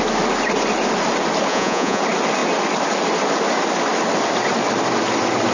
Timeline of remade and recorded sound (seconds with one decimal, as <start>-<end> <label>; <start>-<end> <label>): 0.0-1.5 recorded; 1.5-2.0 remade; 2.0-5.5 recorded